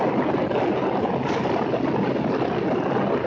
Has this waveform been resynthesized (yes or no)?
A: no